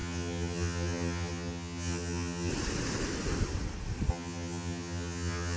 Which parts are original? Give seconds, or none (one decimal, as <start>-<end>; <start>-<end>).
2.5-4.1